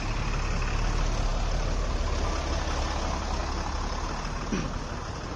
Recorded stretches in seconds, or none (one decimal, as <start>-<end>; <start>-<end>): 0.0-3.4; 4.1-5.4